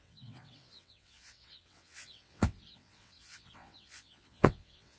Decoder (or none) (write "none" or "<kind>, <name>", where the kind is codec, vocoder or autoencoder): vocoder, WaveNeXt